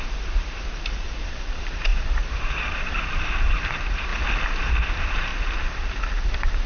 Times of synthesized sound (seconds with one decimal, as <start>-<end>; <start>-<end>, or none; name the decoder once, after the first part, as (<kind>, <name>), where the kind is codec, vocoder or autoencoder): 0.0-4.1 (vocoder, BigVGAN v2); 4.8-5.3; 6.1-6.7